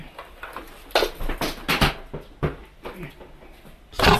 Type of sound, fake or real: real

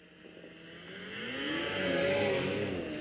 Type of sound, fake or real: real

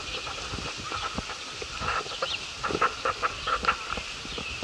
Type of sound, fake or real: fake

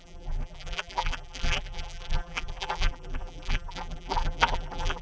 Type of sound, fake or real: fake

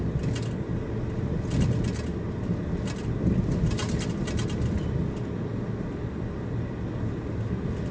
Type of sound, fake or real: real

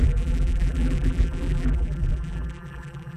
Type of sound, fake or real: fake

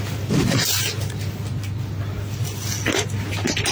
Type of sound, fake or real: real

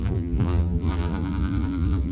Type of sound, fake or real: fake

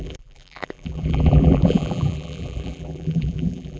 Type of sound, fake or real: fake